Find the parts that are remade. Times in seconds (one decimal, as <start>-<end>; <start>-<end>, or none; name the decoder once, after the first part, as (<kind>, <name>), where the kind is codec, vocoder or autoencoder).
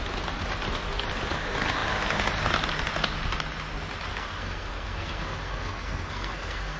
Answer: 4.1-6.8 (codec, SNAC)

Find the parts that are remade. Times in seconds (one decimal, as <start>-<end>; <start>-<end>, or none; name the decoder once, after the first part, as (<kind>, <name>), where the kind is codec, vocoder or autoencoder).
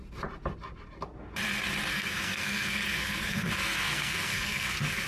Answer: 1.9-5.1 (codec, SNAC)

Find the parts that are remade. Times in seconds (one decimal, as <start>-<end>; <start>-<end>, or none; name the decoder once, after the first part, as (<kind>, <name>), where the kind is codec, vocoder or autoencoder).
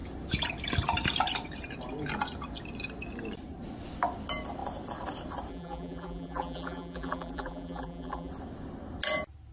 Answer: 5.5-8.3 (vocoder, BigVGAN v2)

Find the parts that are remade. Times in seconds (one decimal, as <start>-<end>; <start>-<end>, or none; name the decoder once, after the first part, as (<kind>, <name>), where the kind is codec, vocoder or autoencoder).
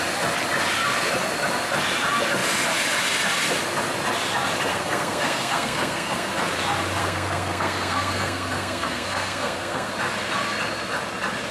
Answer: 4.7-6.3 (codec, SNAC); 7.0-9.9